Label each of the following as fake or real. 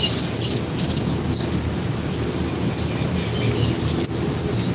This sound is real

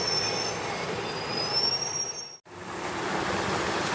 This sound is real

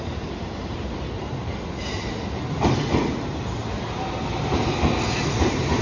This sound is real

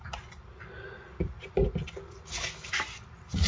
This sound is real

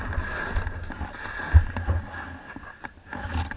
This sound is real